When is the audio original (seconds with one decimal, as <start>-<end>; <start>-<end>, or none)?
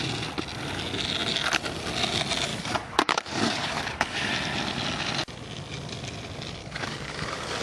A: 0.0-2.5; 4.3-6.6